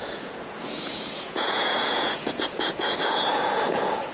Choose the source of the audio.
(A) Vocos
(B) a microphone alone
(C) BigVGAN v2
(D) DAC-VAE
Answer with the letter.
A